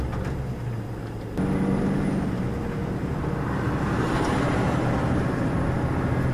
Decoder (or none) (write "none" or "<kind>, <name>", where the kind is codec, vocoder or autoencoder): none